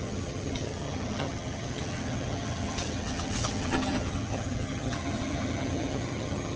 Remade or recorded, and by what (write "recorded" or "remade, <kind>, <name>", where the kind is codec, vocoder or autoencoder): remade, vocoder, HiFi-GAN